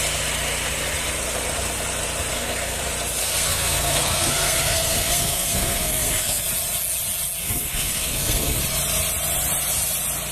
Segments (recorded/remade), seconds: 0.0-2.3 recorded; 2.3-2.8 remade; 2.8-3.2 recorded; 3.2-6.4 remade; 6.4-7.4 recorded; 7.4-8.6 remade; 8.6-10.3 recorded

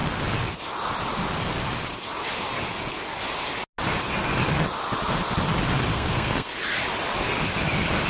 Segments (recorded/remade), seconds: 0.0-5.9 recorded; 5.9-6.5 remade; 6.5-8.1 recorded

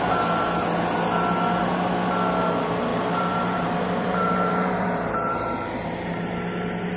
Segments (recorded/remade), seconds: 0.0-2.9 recorded; 2.9-6.2 remade; 6.2-7.0 recorded

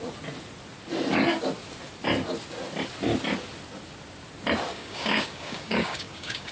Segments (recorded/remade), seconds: 0.0-4.7 recorded; 4.7-6.5 remade